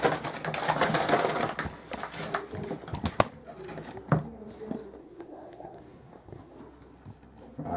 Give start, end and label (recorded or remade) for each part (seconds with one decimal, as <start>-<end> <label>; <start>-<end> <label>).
0.0-5.0 recorded; 5.0-6.6 remade; 6.6-7.8 recorded